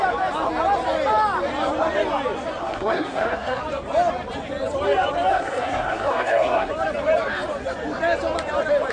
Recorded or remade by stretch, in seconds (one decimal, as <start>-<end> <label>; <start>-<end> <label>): 0.0-2.6 recorded; 2.6-3.6 remade; 3.6-5.3 recorded; 5.3-6.7 remade; 6.7-8.9 recorded